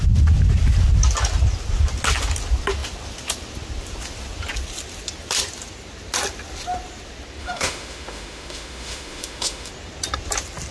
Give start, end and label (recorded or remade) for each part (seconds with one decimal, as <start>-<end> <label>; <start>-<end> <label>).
0.0-7.4 recorded; 7.4-9.7 remade; 9.7-10.7 recorded